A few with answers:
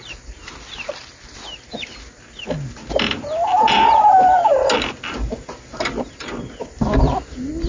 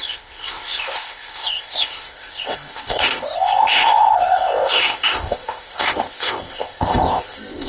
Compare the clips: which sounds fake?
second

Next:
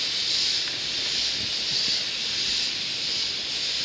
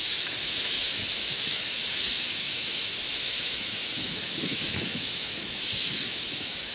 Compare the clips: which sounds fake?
second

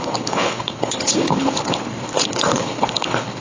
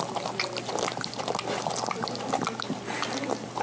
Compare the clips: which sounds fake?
first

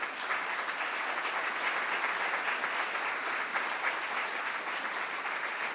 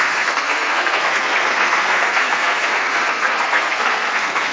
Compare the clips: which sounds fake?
second